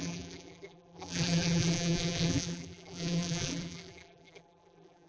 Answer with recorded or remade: remade